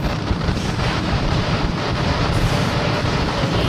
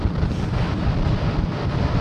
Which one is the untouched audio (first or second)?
second